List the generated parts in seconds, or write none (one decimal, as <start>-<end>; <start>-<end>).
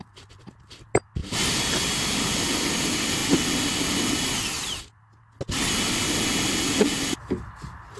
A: 1.2-2.3